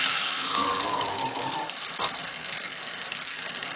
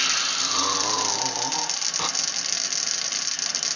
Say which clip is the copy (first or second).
first